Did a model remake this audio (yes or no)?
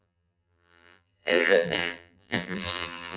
yes